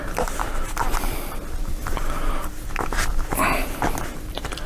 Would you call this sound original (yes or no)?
yes